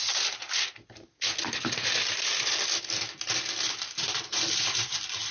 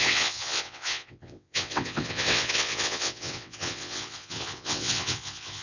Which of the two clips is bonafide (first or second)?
first